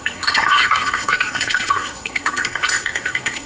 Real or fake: fake